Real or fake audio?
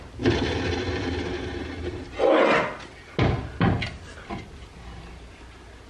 real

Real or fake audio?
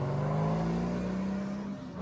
real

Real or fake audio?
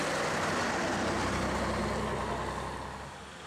real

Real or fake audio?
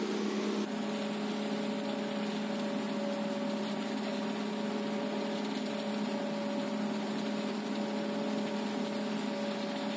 real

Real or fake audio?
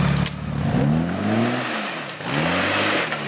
real